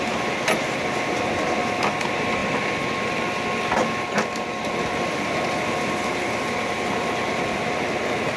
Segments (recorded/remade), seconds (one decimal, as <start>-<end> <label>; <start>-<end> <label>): 0.0-8.4 recorded